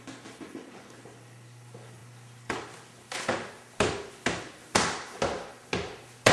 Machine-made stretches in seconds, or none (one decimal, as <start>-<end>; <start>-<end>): none